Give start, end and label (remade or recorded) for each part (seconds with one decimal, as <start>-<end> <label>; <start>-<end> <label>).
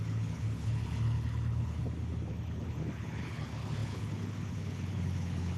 0.0-1.8 remade; 1.8-2.3 recorded; 2.3-5.6 remade